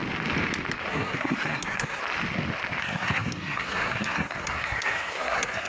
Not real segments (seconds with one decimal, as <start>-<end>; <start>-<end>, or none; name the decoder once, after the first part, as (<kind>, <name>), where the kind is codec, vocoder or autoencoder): 0.9-2.0 (codec, SNAC); 2.8-5.7